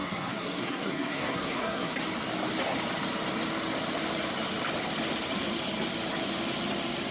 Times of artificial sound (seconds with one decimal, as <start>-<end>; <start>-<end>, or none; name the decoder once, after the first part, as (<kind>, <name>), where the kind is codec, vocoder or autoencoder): 0.0-1.9 (codec, SNAC)